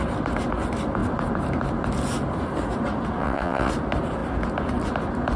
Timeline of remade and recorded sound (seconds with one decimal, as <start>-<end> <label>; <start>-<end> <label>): 0.0-3.2 recorded; 3.2-3.7 remade; 3.7-5.4 recorded